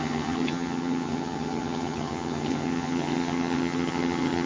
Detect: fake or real fake